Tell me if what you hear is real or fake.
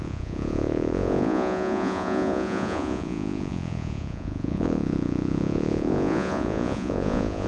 fake